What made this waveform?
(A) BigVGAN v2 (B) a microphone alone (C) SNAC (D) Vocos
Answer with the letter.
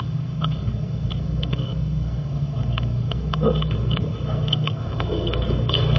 C